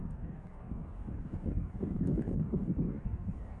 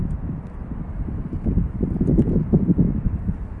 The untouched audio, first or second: second